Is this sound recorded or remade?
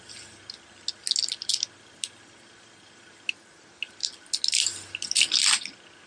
recorded